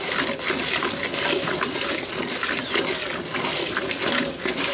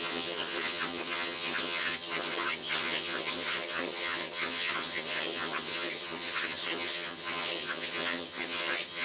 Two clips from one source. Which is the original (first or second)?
first